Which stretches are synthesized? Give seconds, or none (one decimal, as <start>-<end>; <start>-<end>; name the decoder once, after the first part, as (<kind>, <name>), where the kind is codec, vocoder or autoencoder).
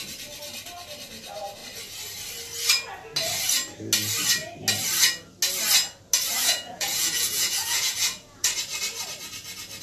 6.4-8.5 (vocoder, Vocos)